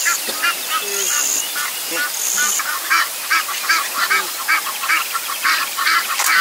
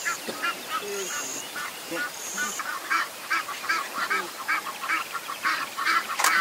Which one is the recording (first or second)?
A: first